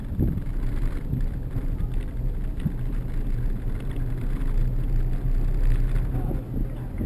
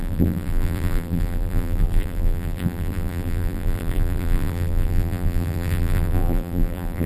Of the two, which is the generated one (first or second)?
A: second